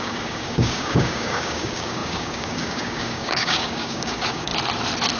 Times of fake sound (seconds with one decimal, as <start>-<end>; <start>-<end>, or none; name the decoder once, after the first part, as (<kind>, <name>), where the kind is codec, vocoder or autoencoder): 0.0-4.5 (codec, DAC)